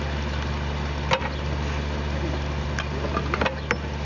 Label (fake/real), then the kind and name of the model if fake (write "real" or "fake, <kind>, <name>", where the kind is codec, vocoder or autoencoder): real